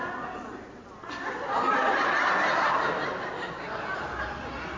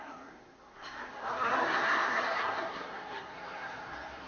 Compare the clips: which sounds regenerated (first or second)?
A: second